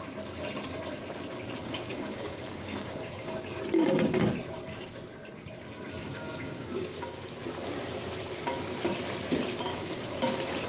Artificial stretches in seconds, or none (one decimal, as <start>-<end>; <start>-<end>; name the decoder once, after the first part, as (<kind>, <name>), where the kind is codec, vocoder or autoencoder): 1.6-3.6 (codec, DAC); 6.0-7.2; 9.7-10.2